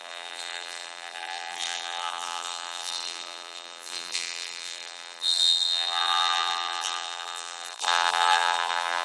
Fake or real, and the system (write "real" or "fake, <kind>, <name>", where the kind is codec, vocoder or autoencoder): fake, vocoder, BigVGAN v2